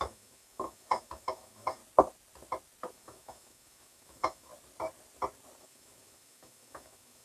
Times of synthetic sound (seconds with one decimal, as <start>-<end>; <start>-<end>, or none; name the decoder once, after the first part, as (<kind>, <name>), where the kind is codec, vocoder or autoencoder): 0.0-1.8 (autoencoder, DAC-VAE); 2.9-4.5; 5.6-7.2